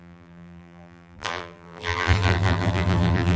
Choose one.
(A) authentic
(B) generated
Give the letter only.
B